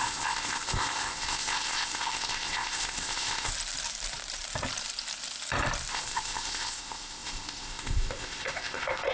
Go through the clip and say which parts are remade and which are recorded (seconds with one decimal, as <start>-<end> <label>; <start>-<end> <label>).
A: 0.0-3.5 remade; 3.5-5.9 recorded; 5.9-9.1 remade